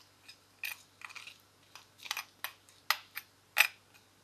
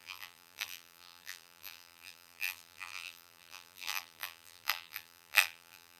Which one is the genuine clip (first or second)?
first